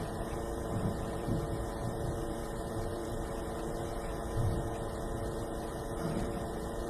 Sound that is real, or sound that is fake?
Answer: fake